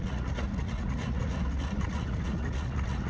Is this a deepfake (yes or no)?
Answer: yes